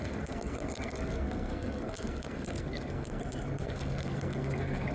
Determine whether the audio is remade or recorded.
remade